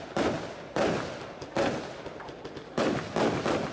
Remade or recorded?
recorded